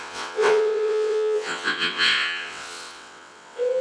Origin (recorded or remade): remade